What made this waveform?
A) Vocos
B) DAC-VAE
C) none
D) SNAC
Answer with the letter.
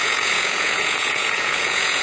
A